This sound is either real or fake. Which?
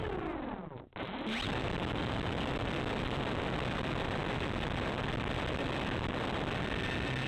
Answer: real